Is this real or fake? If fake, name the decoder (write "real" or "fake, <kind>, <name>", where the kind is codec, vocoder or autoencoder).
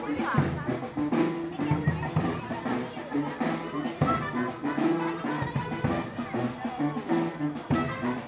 real